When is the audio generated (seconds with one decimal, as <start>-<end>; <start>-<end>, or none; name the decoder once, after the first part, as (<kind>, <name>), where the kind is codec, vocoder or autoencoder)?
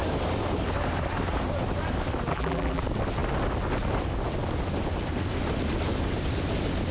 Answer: 2.3-2.8 (vocoder, BigVGAN v2)